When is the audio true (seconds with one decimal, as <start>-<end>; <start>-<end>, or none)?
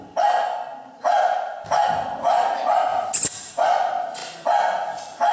0.0-5.3